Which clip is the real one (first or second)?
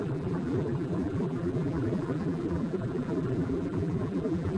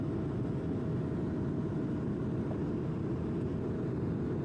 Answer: second